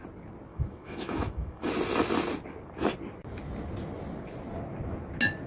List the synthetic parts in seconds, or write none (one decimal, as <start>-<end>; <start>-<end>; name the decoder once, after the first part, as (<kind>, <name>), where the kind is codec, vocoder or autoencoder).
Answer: 0.5-1.7 (autoencoder, DAC-VAE)